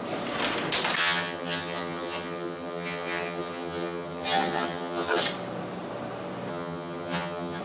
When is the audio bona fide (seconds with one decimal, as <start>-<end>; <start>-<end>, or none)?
0.0-1.0; 5.2-6.5